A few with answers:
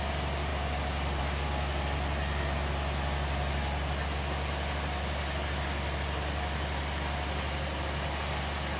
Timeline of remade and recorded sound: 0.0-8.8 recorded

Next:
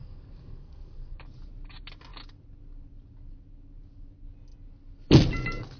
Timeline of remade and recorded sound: 0.0-1.2 remade; 1.2-5.8 recorded

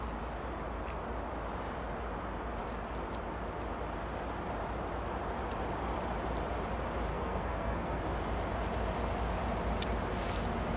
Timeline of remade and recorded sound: 0.0-7.1 recorded; 7.1-8.0 remade; 8.0-10.8 recorded

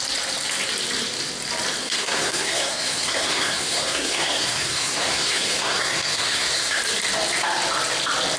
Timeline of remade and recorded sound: 0.0-1.8 recorded; 1.8-6.8 remade; 6.8-8.4 recorded

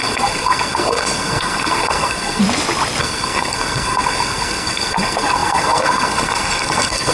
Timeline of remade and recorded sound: 0.0-2.4 remade; 2.4-3.0 recorded; 3.0-7.1 remade